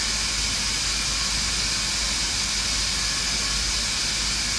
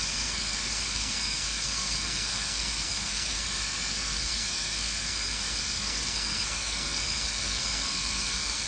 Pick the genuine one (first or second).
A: first